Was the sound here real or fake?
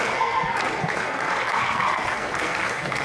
fake